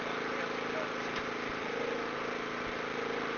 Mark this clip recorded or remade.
recorded